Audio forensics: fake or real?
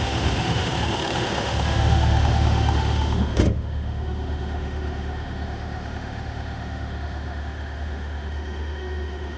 fake